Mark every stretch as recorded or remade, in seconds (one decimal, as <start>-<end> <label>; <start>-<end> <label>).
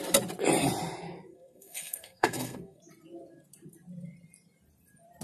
0.0-1.3 recorded; 1.3-2.8 remade; 2.8-5.2 recorded